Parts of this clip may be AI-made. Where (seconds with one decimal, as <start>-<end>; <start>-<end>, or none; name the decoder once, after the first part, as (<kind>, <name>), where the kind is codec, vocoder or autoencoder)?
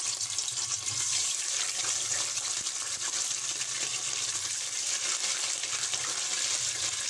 none